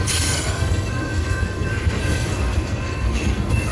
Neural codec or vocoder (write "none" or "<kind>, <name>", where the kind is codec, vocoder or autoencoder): codec, SNAC